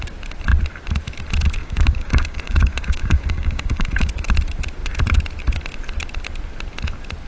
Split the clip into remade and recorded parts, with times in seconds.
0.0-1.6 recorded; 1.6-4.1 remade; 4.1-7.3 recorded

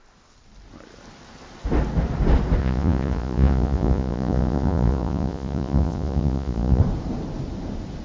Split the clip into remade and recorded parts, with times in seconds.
0.0-2.6 recorded; 2.6-6.8 remade; 6.8-8.0 recorded

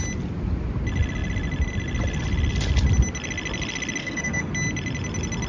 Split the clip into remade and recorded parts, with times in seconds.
0.0-4.0 recorded; 4.0-4.5 remade; 4.5-5.5 recorded

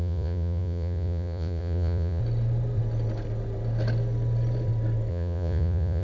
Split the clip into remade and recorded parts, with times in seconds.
0.0-2.2 remade; 2.2-5.1 recorded; 5.1-6.0 remade